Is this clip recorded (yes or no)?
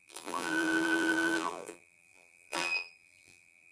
no